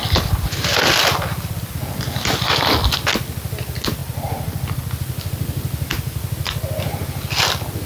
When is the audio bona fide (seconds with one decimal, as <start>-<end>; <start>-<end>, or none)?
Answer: 0.0-4.0; 4.9-7.9